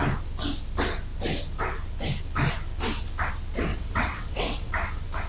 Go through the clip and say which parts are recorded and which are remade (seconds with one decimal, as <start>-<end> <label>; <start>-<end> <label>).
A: 0.0-3.7 recorded; 3.7-4.7 remade; 4.7-5.3 recorded